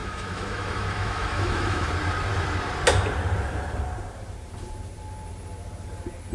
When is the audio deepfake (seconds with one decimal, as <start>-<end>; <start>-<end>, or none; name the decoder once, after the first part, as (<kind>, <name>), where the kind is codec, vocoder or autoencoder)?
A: 0.0-1.9 (autoencoder, DAC-VAE)